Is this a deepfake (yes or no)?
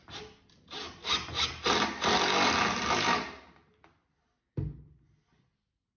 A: no